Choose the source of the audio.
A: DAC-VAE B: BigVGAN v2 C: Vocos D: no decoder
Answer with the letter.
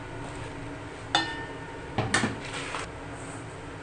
D